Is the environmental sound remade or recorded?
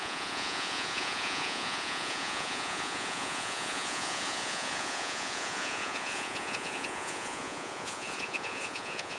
remade